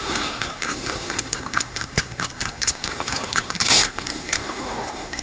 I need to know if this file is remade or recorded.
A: remade